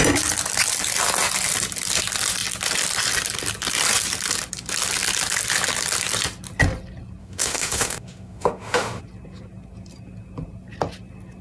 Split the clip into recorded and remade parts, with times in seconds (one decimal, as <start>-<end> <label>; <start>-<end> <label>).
0.0-7.2 recorded; 7.2-9.0 remade; 9.0-11.4 recorded